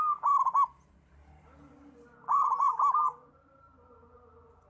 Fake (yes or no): no